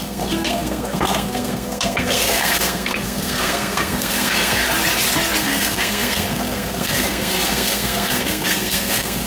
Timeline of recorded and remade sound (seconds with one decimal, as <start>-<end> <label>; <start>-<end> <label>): 0.0-4.6 remade; 4.6-5.4 recorded; 5.4-9.3 remade